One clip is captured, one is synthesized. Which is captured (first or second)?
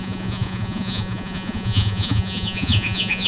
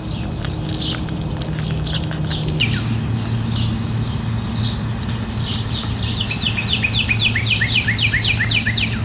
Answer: second